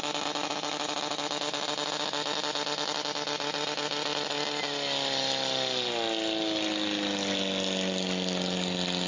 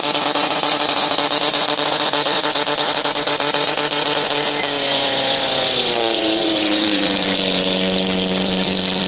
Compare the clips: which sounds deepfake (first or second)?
second